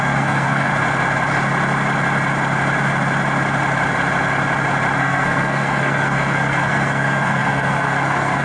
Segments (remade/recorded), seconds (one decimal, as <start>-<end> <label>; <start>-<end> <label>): 0.0-0.7 remade; 0.7-5.0 recorded; 5.0-8.4 remade